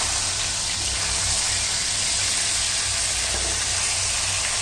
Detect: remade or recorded recorded